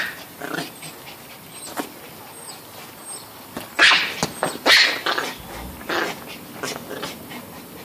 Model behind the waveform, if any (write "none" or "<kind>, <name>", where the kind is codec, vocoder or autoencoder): none